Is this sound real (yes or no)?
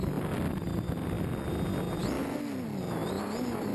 yes